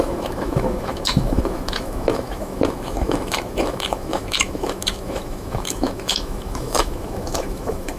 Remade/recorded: remade